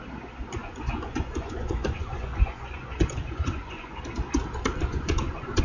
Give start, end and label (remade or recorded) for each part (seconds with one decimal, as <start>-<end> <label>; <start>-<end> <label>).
0.0-0.6 recorded; 0.6-4.0 remade; 4.0-4.9 recorded; 4.9-5.6 remade